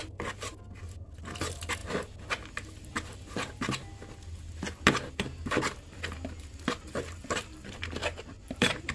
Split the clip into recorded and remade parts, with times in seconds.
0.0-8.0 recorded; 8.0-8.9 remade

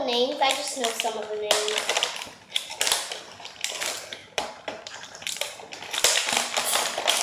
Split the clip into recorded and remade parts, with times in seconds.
0.0-4.2 recorded; 4.2-5.8 remade; 5.8-7.2 recorded

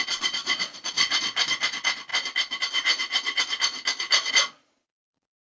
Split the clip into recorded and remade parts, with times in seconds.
0.0-2.1 remade; 2.1-4.3 recorded; 4.3-5.5 remade